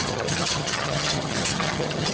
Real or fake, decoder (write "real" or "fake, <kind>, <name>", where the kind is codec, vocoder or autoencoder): fake, vocoder, HiFi-GAN